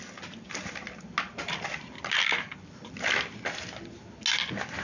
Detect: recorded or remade recorded